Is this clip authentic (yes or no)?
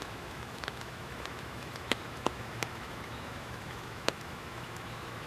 no